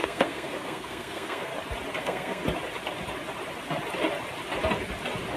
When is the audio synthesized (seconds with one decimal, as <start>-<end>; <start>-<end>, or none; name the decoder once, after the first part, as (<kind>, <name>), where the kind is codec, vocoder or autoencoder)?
0.0-1.5 (codec, SNAC); 2.0-2.4